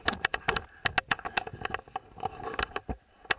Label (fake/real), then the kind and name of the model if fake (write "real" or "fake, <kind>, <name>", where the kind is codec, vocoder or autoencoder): real